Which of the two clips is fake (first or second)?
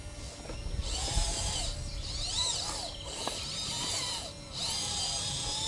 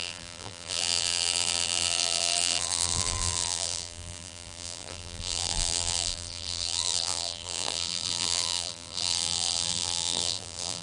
second